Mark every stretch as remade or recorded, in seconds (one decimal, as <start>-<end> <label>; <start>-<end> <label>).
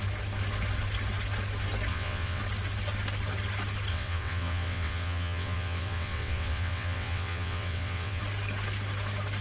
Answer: 0.0-1.9 recorded; 1.9-2.4 remade; 2.4-3.9 recorded; 3.9-8.2 remade; 8.2-9.4 recorded